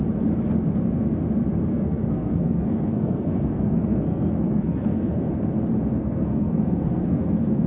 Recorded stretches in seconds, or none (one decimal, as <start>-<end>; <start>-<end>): 0.0-1.7; 5.3-6.0